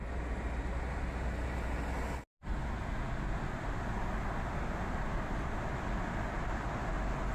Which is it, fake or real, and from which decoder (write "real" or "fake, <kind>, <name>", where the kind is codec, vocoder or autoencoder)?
real